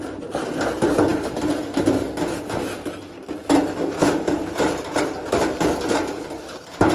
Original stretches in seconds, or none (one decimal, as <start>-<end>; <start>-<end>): 0.0-4.0